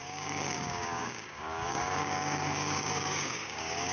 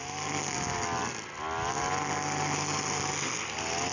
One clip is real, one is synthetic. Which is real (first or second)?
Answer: second